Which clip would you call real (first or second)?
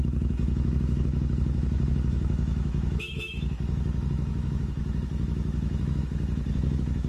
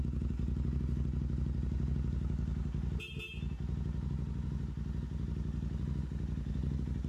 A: second